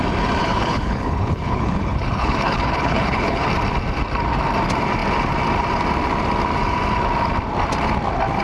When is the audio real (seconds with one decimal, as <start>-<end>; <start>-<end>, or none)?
0.0-0.4; 3.5-8.4